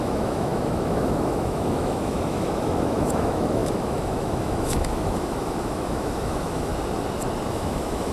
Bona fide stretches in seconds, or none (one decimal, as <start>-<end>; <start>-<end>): 6.7-7.5